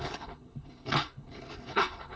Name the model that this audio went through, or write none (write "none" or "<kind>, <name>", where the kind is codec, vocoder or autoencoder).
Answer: codec, HILCodec